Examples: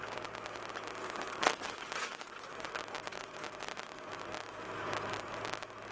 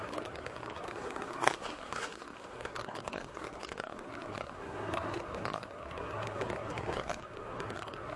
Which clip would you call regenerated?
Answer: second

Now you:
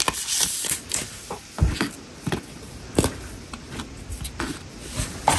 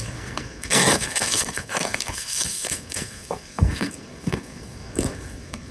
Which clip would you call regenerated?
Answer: second